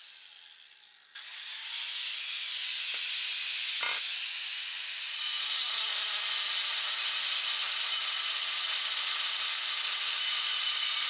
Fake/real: real